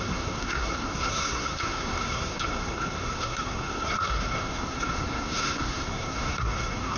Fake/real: fake